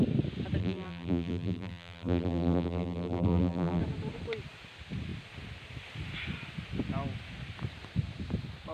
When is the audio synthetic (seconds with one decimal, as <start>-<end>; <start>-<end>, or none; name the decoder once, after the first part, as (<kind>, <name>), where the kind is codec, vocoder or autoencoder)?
0.6-3.8 (vocoder, BigVGAN v2)